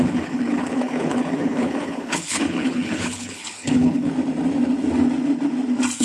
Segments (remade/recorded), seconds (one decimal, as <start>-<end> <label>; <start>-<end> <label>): 0.0-4.1 remade; 4.1-6.0 recorded